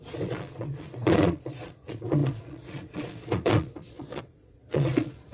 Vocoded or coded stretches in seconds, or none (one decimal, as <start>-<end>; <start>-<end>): 0.0-5.3